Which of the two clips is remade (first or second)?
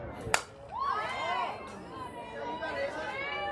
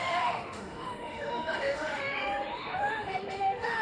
second